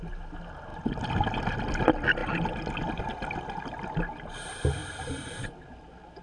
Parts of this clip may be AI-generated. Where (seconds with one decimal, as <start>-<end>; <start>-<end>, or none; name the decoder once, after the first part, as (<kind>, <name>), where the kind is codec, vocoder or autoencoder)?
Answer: none